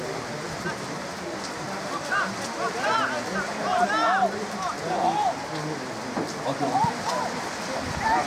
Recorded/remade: recorded